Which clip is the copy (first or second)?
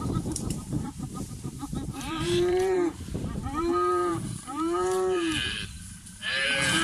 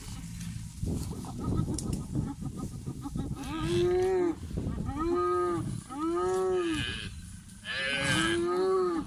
first